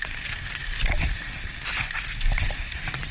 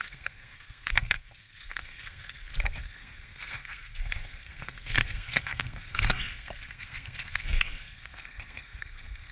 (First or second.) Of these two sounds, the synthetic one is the second